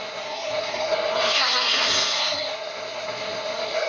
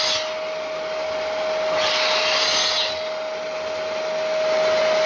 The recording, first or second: second